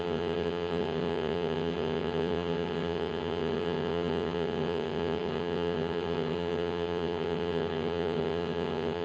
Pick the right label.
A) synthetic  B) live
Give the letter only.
A